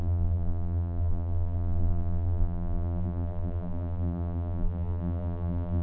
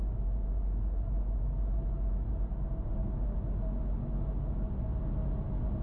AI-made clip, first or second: first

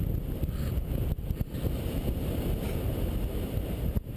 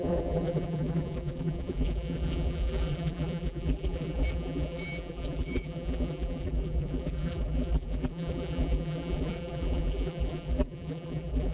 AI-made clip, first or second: second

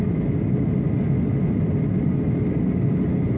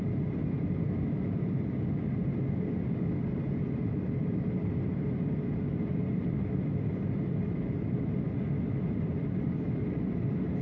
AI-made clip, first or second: second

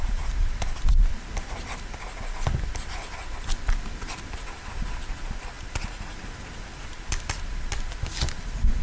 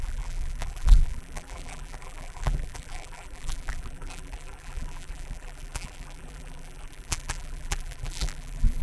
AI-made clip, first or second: second